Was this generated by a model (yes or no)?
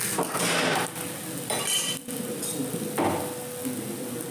no